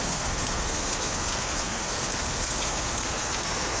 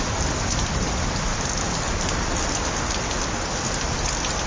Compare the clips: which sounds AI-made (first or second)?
first